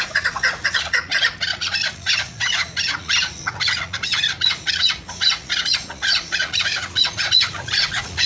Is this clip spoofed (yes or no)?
yes